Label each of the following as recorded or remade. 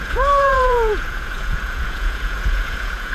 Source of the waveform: remade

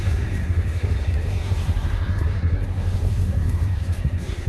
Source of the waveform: remade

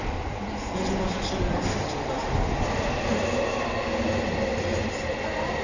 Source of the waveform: recorded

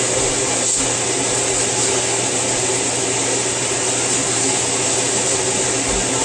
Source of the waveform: recorded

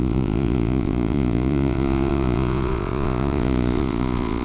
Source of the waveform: remade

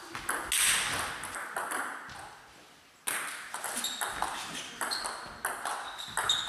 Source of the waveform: recorded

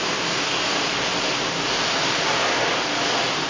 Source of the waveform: recorded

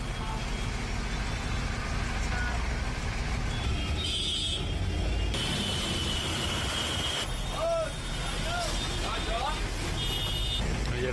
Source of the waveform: recorded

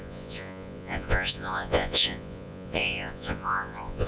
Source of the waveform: remade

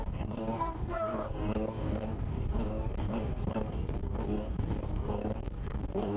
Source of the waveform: remade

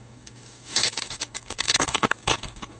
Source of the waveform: remade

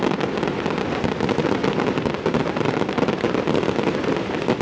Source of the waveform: recorded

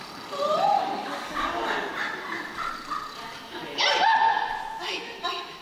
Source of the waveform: recorded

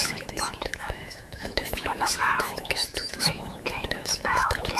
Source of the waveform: remade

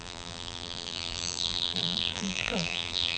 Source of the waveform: remade